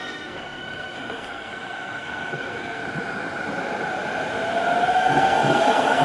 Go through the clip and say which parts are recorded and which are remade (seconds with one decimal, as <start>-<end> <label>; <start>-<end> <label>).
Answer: 0.0-2.8 remade; 2.8-4.9 recorded; 4.9-6.0 remade